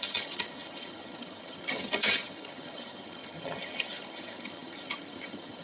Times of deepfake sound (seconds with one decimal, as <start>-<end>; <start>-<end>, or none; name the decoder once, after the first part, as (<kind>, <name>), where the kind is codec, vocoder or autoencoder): 0.0-5.6 (vocoder, HiFi-GAN)